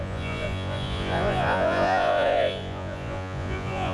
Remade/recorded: remade